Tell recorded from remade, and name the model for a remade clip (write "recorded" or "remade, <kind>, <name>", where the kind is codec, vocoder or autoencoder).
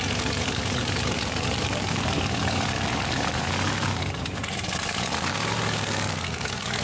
remade, codec, DAC